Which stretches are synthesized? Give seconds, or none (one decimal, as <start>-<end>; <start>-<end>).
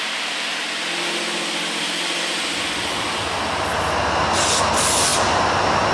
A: none